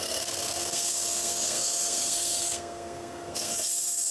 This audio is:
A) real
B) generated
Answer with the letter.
B